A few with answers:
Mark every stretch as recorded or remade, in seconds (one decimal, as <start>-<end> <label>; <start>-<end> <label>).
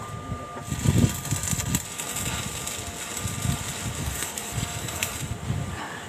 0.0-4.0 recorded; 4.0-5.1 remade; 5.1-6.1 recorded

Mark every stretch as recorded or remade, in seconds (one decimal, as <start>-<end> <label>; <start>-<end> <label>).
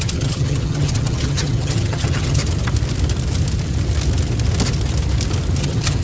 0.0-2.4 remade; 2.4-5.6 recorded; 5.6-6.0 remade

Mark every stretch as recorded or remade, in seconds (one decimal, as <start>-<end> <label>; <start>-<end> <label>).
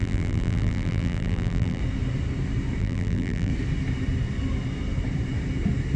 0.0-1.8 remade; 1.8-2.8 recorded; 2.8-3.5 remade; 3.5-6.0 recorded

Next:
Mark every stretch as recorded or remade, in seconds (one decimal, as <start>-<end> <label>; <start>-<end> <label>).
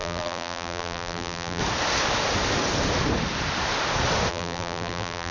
0.0-1.6 remade; 1.6-4.3 recorded; 4.3-5.3 remade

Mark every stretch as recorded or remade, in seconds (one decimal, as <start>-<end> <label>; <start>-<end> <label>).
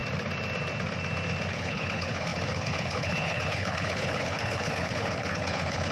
0.0-1.5 recorded; 1.5-5.9 remade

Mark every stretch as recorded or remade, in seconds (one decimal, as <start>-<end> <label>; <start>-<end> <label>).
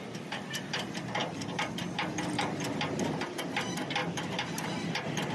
0.0-5.3 recorded